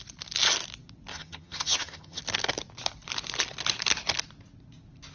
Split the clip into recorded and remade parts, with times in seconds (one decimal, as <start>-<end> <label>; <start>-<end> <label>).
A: 0.0-1.1 recorded; 1.1-2.2 remade; 2.2-5.1 recorded